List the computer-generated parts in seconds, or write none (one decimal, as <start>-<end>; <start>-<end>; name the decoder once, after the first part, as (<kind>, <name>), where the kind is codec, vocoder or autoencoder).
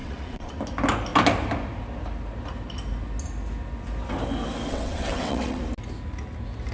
0.0-0.5 (vocoder, WaveNeXt); 4.7-5.6